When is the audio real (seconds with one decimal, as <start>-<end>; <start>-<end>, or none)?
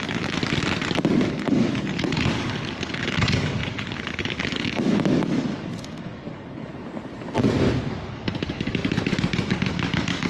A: 0.4-1.3; 6.7-8.1; 8.8-9.5